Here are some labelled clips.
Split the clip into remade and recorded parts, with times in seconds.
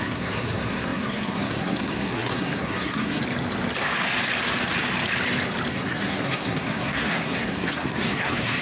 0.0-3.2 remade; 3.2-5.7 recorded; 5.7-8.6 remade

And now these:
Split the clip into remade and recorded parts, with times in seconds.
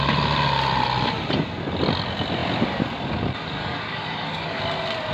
0.0-3.6 recorded; 3.6-4.6 remade; 4.6-5.1 recorded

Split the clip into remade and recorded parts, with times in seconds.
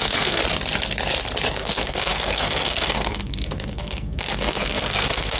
0.0-0.4 remade; 0.4-1.5 recorded; 1.5-5.4 remade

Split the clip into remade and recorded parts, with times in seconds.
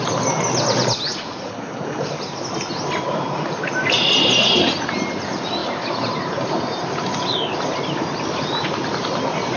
0.0-9.6 recorded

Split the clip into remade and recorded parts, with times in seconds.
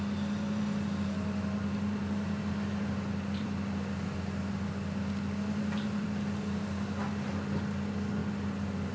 0.0-8.2 remade; 8.2-8.9 recorded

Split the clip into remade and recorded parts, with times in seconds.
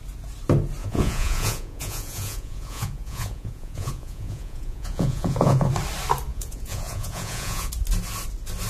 0.0-0.8 recorded; 0.8-5.7 remade; 5.7-6.3 recorded; 6.3-7.7 remade; 7.7-8.7 recorded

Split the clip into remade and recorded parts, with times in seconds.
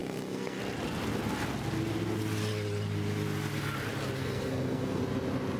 0.0-0.6 remade; 0.6-4.2 recorded; 4.2-5.0 remade; 5.0-5.6 recorded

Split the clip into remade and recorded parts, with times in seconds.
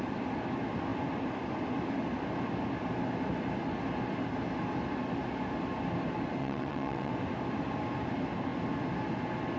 0.0-6.4 recorded; 6.4-7.1 remade; 7.1-9.6 recorded